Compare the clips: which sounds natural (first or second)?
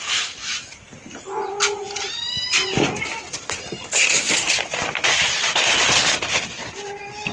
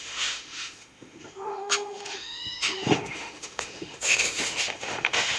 first